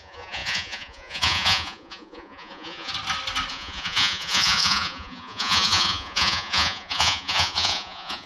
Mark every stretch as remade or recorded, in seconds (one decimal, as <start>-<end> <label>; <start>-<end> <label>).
0.0-2.9 remade; 2.9-3.5 recorded; 3.5-8.3 remade